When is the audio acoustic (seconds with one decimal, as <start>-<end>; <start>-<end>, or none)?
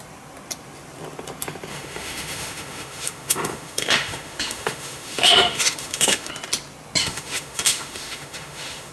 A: 0.0-1.7; 6.3-7.0